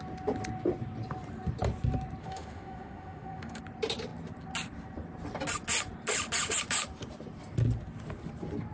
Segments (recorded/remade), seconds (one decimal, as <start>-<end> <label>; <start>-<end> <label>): 0.0-2.2 recorded; 2.2-3.6 remade; 3.6-8.7 recorded